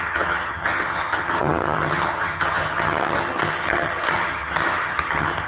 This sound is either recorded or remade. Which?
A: remade